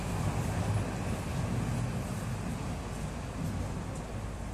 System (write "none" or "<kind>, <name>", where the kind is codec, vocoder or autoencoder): none